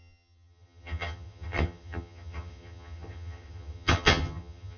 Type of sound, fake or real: fake